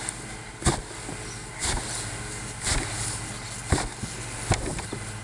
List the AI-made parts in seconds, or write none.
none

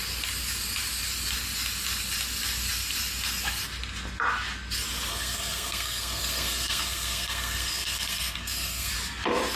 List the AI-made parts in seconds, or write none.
5.1-8.9

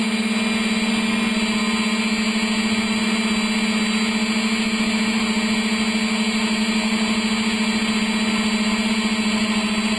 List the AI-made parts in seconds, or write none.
none